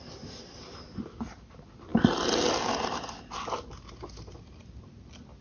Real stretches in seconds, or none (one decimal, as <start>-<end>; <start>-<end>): 0.0-5.4